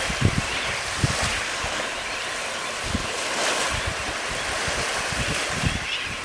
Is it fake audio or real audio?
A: real